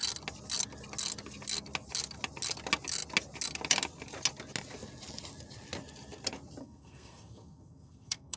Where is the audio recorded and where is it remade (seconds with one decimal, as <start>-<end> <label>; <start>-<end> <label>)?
0.0-6.6 recorded; 6.6-8.4 remade

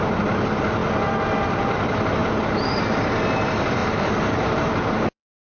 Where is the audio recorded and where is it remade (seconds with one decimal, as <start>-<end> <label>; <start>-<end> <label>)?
0.0-2.2 recorded; 2.2-2.8 remade; 2.8-3.8 recorded; 3.8-5.5 remade

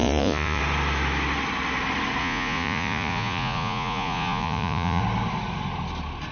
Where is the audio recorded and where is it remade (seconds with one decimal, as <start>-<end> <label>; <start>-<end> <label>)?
0.0-0.6 remade; 0.6-2.2 recorded; 2.2-5.0 remade; 5.0-6.3 recorded

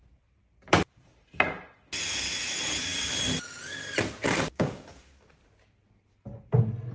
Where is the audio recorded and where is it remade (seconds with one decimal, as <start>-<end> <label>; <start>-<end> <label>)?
0.0-4.5 recorded; 4.5-5.3 remade; 5.3-6.9 recorded

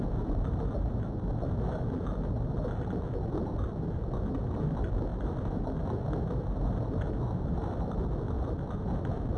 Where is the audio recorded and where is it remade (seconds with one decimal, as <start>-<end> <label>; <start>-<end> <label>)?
0.0-9.4 recorded

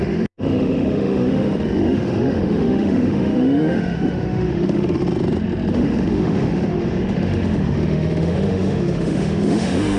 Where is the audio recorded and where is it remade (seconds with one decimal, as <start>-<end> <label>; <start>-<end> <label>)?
0.0-5.0 remade; 5.0-5.7 recorded; 5.7-10.0 remade

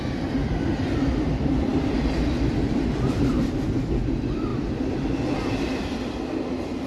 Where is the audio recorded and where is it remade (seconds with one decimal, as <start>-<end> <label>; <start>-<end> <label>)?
0.0-6.9 recorded